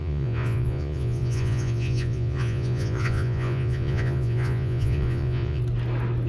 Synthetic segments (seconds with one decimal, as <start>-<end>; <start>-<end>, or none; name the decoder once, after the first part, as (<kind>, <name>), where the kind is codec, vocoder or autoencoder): 0.0-5.6 (vocoder, Vocos)